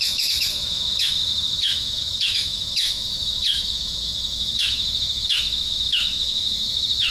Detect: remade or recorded remade